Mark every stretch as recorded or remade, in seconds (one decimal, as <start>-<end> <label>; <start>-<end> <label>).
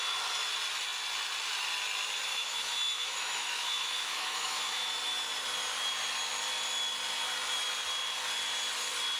0.0-2.3 recorded; 2.3-4.9 remade; 4.9-9.2 recorded